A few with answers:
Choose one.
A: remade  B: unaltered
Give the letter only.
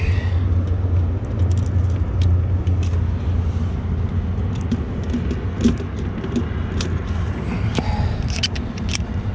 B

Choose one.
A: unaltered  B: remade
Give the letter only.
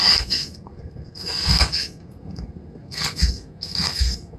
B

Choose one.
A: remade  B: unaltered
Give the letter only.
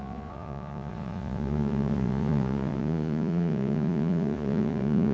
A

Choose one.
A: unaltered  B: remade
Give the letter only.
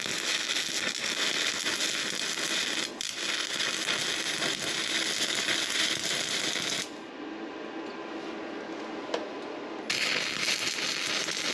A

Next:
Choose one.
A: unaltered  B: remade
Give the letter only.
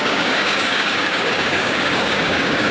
B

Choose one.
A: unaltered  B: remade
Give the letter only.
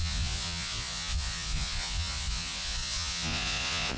B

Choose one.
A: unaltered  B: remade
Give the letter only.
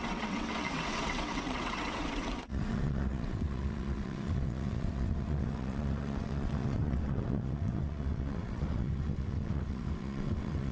B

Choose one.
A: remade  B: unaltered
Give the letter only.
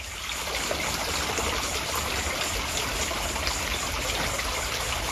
B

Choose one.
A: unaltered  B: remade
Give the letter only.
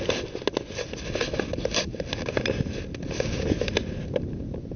A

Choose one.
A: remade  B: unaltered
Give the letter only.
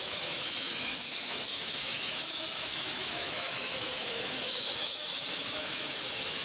A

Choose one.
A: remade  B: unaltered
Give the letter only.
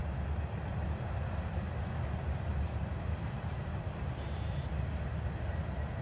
B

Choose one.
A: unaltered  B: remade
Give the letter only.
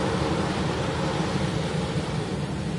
B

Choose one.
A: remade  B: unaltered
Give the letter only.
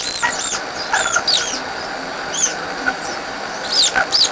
B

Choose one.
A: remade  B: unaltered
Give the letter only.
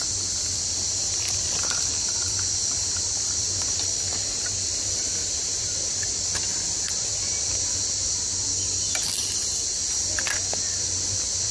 B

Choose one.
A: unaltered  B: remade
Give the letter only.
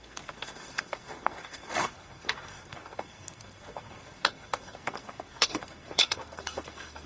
B